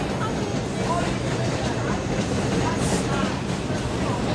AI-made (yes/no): no